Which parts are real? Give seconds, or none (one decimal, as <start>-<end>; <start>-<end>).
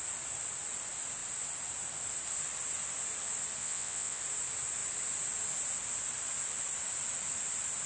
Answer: 0.0-3.6; 4.2-7.9